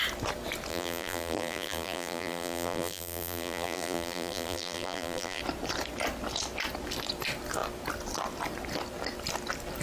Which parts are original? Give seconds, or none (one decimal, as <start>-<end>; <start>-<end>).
0.0-0.7; 5.4-9.8